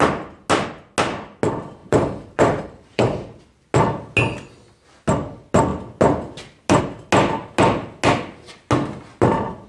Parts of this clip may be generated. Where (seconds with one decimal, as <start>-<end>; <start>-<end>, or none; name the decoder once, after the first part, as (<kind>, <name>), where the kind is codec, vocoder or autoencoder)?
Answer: 1.8-3.4 (vocoder, BigVGAN v2)

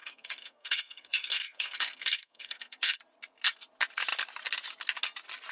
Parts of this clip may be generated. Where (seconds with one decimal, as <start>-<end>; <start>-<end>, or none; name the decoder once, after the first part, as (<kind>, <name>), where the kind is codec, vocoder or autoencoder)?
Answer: 0.0-3.0 (codec, SNAC)

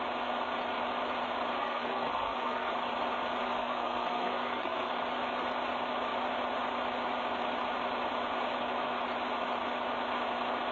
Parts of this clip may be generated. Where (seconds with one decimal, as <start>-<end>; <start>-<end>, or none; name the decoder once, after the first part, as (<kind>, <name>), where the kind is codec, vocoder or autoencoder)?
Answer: 1.6-2.7 (codec, SNAC); 3.4-4.9

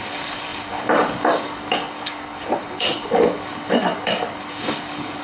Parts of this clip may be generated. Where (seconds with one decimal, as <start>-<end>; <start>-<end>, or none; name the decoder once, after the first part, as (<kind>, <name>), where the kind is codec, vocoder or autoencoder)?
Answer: 0.0-5.2 (codec, DAC)

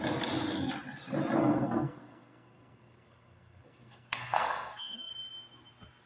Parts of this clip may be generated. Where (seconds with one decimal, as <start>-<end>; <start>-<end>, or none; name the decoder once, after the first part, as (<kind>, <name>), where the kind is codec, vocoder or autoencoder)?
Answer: 1.4-5.1 (codec, SNAC)